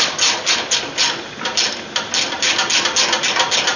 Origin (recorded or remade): recorded